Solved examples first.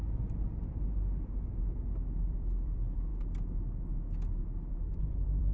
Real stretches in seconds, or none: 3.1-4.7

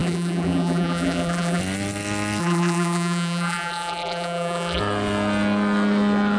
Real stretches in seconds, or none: 1.6-2.4; 4.8-6.4

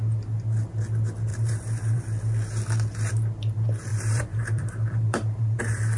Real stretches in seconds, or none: 0.0-1.3; 2.0-3.9; 5.6-6.0

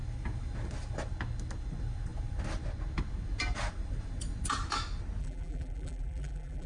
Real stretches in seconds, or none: 0.0-5.2